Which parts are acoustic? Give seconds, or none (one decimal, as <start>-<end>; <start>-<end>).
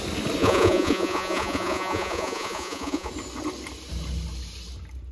0.0-0.4; 3.1-5.1